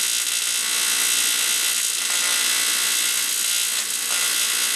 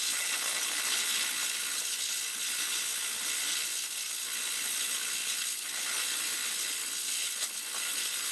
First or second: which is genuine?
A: first